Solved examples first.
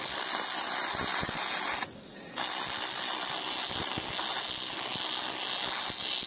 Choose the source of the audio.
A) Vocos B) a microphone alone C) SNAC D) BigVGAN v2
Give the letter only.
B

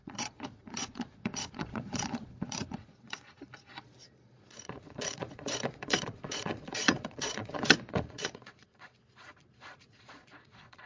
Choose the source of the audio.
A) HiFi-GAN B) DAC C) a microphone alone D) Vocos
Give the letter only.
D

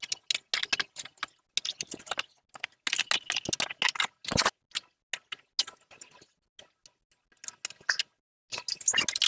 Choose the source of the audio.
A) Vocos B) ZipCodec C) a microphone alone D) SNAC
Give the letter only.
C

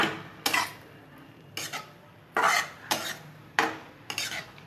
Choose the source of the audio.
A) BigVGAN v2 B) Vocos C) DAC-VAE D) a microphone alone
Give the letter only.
D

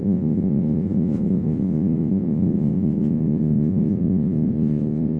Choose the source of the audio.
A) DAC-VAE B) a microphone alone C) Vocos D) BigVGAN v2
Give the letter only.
C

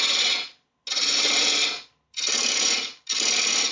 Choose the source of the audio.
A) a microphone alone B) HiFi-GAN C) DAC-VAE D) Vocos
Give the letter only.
A